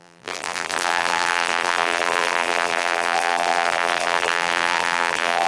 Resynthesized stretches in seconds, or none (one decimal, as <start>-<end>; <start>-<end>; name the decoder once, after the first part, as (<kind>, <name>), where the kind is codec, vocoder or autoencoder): 0.0-5.5 (vocoder, BigVGAN v2)